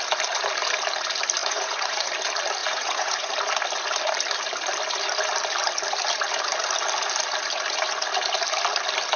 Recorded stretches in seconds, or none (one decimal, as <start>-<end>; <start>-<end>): 0.0-1.4; 2.1-2.6; 3.3-9.2